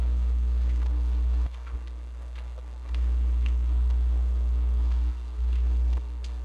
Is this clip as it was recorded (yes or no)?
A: no